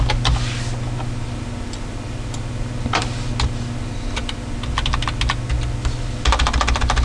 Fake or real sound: real